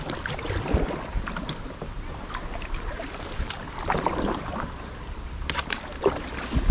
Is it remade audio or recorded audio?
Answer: recorded